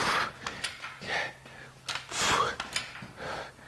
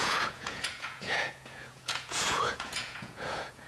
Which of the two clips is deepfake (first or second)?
second